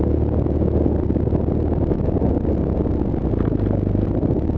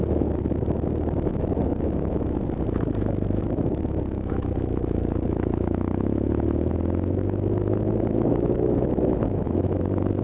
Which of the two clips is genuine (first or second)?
first